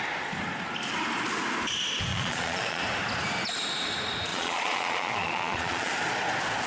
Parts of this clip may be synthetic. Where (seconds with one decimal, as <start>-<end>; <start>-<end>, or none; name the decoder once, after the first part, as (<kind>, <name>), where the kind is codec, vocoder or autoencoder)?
2.1-2.8 (vocoder, Vocos); 4.3-5.9

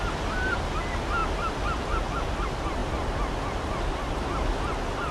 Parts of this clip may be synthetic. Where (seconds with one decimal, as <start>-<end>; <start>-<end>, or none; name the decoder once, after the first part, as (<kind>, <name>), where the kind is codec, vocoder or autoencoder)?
none

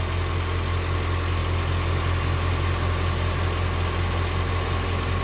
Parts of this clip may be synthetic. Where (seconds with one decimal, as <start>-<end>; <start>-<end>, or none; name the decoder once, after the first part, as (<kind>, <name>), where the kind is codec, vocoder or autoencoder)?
none

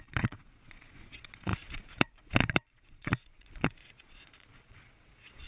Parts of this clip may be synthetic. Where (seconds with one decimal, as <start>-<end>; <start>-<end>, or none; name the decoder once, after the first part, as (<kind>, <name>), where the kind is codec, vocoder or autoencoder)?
0.0-5.5 (vocoder, Vocos)

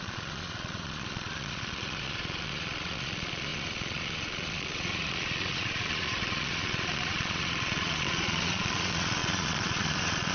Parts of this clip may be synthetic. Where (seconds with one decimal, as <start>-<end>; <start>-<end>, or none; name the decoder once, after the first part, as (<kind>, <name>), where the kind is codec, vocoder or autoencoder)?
0.0-10.3 (vocoder, Vocos)